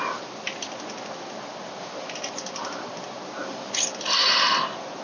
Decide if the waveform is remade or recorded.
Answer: recorded